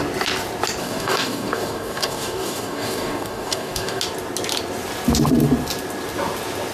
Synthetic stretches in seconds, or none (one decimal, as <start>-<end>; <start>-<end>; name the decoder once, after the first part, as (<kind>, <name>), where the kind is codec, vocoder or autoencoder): 0.8-4.0 (codec, DAC)